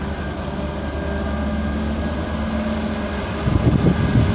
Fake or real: real